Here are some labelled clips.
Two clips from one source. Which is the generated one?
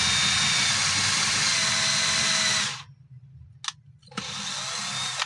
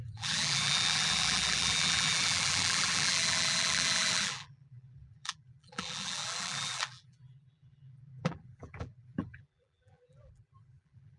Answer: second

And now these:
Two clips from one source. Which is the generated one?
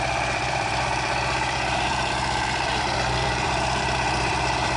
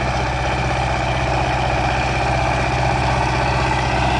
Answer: first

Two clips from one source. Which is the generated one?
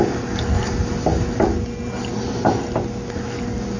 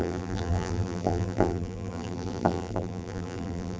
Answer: second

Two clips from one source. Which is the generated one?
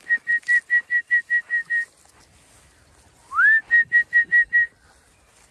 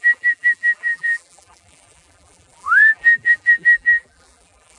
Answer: second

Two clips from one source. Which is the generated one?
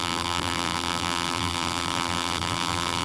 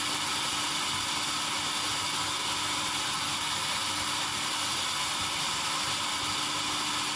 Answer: first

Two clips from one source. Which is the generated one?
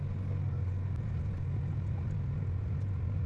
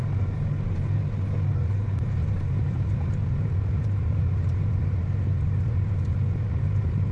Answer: second